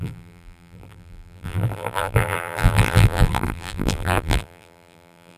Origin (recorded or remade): remade